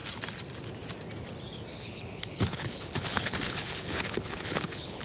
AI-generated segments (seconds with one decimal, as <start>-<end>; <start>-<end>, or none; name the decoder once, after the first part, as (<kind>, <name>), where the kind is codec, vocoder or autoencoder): 1.7-5.0 (codec, HILCodec)